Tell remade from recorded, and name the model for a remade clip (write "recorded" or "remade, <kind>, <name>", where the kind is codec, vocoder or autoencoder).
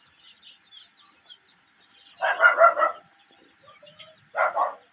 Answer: recorded